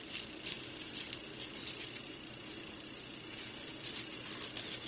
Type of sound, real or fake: real